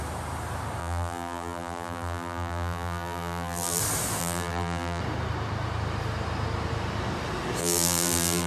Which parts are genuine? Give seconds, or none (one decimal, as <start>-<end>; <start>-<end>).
0.0-0.8; 3.8-4.2; 5.0-7.6